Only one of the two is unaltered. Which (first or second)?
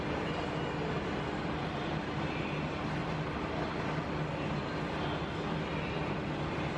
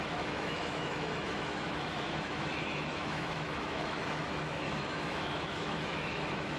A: first